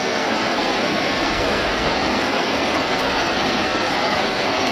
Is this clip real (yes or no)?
no